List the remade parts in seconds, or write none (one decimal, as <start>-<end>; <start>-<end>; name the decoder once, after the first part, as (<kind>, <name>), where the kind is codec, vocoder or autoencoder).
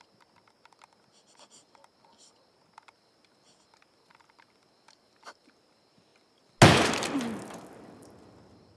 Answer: none